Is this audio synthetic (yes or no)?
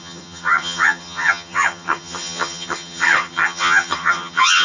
yes